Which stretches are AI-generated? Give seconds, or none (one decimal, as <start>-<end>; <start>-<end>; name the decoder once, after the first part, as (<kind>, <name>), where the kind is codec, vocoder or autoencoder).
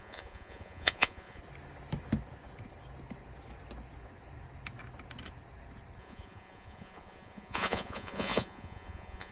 0.0-1.4 (vocoder, Vocos); 6.0-9.3